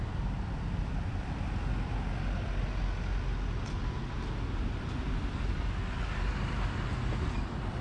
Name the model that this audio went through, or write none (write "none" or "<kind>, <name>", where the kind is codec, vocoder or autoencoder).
none